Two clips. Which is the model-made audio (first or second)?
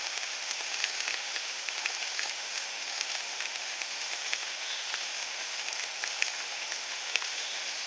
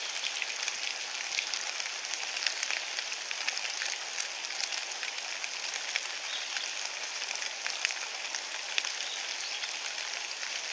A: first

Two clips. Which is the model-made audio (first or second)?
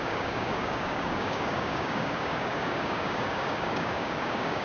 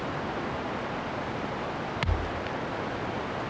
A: first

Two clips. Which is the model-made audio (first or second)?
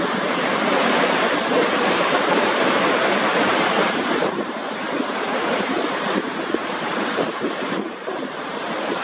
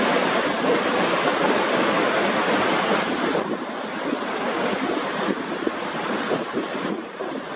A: first